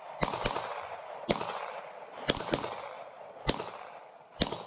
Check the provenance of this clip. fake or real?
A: real